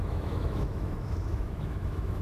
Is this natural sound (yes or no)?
no